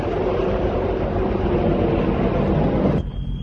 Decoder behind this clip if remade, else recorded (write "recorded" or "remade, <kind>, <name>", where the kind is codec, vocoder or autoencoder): recorded